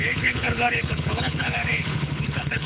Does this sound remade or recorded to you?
remade